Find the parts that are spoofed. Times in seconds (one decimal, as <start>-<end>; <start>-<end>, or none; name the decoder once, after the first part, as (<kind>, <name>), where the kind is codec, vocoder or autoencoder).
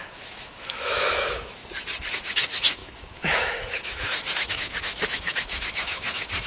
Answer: 0.0-1.6 (autoencoder, DAC-VAE); 2.1-6.5